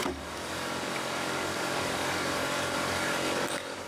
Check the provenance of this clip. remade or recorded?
remade